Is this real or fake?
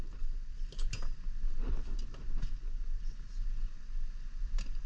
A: real